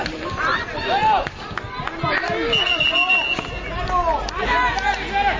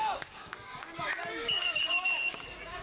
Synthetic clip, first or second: second